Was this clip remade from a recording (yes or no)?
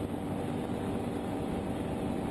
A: no